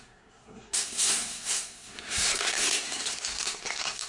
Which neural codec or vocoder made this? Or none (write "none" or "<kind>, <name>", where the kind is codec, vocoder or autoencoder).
codec, SNAC